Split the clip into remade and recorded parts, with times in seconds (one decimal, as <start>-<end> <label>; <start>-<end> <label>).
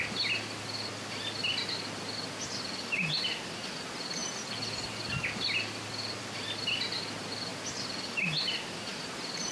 0.0-4.2 recorded; 4.2-6.2 remade; 6.2-8.9 recorded; 8.9-9.5 remade